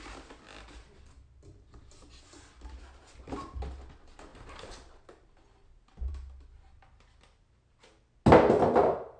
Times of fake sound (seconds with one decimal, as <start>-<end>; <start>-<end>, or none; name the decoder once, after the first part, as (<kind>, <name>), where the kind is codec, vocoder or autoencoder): none